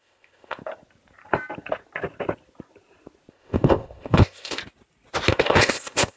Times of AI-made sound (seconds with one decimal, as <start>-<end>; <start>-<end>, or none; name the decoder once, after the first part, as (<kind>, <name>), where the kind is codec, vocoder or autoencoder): 0.0-0.6 (codec, ZipCodec); 3.3-4.6; 5.3-6.2